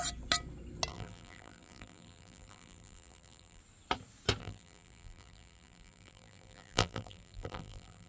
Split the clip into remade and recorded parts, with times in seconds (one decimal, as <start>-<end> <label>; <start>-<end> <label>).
0.0-0.9 recorded; 0.9-3.6 remade; 3.6-4.4 recorded; 4.4-8.1 remade